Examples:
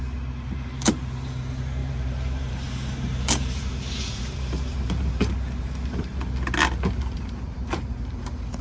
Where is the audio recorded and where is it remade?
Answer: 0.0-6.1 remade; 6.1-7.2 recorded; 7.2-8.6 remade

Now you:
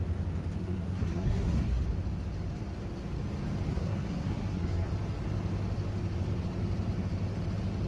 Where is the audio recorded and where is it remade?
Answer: 0.0-0.6 recorded; 0.6-1.8 remade; 1.8-3.7 recorded; 3.7-4.9 remade; 4.9-7.9 recorded

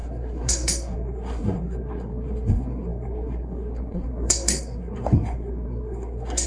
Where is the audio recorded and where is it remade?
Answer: 0.0-6.5 remade

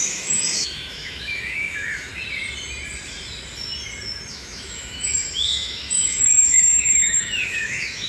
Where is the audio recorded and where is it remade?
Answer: 0.0-2.1 remade; 2.1-4.3 recorded; 4.3-8.1 remade

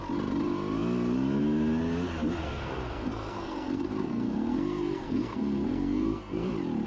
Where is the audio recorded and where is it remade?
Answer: 0.0-2.4 recorded; 2.4-6.5 remade; 6.5-6.9 recorded

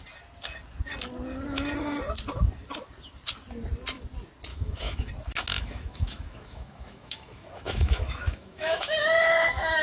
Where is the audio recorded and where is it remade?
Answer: 0.0-4.5 recorded; 4.5-5.1 remade; 5.1-5.5 recorded; 5.5-9.8 remade

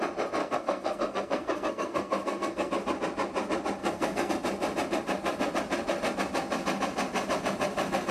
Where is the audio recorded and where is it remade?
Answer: 0.0-0.4 recorded; 0.4-2.7 remade; 2.7-3.8 recorded; 3.8-4.3 remade; 4.3-8.1 recorded

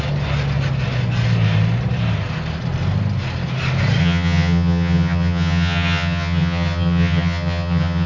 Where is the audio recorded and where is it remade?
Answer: 0.0-4.0 recorded; 4.0-8.1 remade